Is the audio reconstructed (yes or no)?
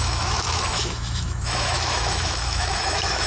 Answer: yes